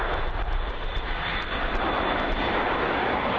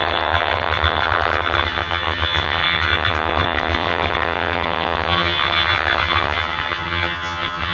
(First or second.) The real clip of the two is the first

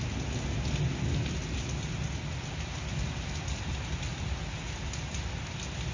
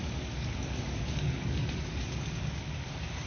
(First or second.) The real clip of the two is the first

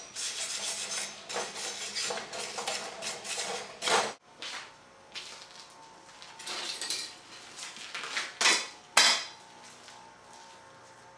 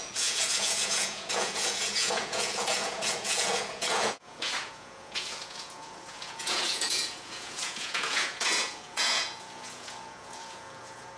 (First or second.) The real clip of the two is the first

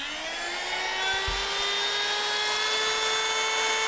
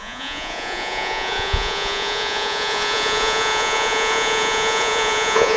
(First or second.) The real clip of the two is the first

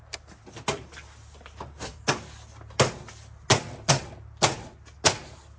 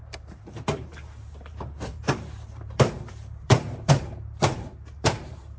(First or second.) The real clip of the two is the first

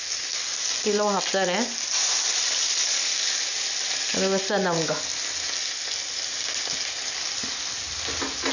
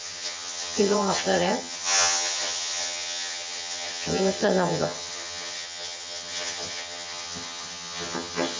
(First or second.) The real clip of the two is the first